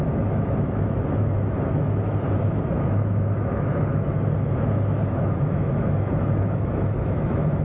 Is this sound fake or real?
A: fake